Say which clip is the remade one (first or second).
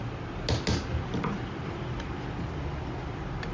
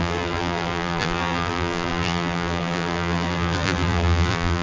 second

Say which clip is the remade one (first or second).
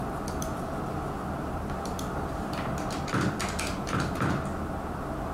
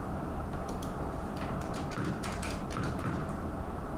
second